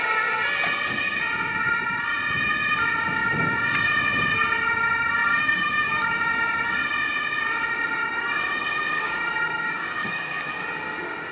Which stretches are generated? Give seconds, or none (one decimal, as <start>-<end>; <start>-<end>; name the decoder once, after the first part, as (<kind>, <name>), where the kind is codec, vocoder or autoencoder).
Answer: 5.2-6.1 (codec, DAC); 8.0-10.4